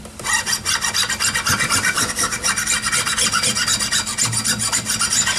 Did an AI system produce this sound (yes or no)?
no